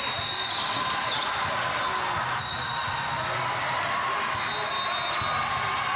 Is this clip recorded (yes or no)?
yes